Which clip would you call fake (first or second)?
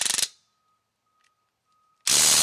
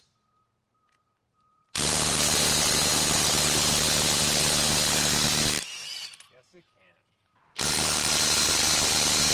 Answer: second